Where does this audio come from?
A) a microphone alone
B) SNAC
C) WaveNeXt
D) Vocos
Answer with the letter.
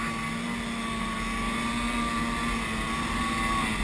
A